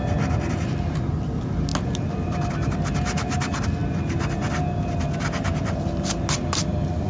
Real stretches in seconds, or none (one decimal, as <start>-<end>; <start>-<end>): 0.0-7.1